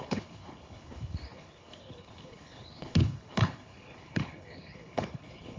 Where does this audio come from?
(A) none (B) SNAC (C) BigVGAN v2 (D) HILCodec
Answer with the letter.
D